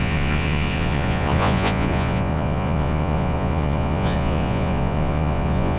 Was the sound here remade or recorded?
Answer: remade